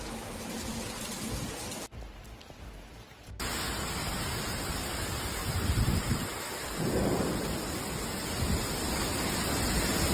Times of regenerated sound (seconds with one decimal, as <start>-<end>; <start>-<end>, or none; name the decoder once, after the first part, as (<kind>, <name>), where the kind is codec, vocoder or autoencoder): 4.0-6.8 (vocoder, BigVGAN v2)